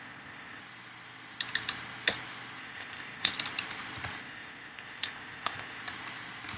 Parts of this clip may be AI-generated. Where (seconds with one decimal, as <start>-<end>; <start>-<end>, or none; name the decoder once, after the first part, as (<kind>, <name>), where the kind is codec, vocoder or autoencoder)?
0.0-0.6 (codec, ZipCodec); 2.6-3.3; 4.2-5.8

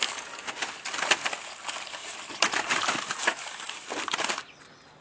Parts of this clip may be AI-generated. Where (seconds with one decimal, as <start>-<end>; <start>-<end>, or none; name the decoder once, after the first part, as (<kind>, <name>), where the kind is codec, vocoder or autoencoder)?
none